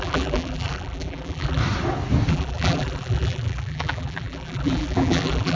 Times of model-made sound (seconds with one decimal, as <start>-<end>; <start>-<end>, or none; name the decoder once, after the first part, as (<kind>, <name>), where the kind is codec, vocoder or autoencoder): 0.0-1.6 (vocoder, BigVGAN v2); 2.3-5.6